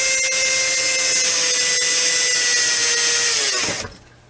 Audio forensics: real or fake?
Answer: real